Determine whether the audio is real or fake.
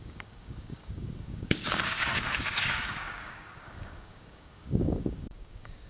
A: fake